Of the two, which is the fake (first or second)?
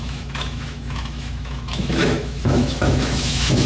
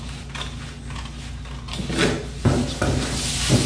first